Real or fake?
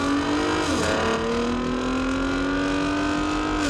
real